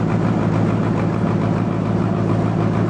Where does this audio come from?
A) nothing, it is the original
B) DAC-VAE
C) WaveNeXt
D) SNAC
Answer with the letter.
A